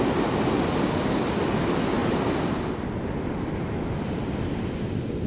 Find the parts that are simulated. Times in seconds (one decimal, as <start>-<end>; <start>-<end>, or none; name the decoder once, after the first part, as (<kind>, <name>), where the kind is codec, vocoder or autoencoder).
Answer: none